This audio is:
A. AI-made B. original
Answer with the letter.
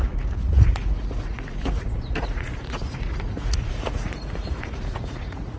A